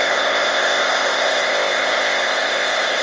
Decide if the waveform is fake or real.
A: fake